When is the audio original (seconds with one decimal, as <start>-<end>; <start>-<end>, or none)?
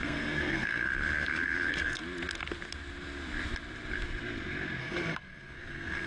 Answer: 2.0-4.8